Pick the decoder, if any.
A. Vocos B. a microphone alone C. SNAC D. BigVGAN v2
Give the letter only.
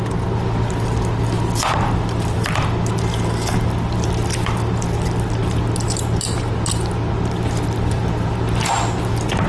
B